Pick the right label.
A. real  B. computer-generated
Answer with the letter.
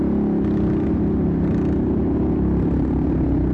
B